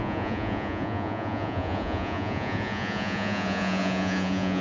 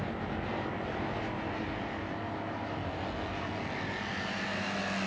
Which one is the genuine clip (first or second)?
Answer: second